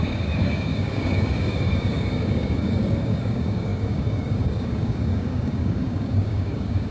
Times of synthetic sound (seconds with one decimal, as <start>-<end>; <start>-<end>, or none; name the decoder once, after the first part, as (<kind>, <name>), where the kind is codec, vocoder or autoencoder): 0.0-6.9 (codec, DAC)